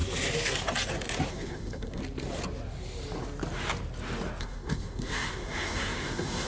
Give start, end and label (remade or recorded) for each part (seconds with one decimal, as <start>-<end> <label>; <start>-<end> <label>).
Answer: 0.0-1.3 recorded; 1.3-2.0 remade; 2.0-4.4 recorded; 4.4-6.5 remade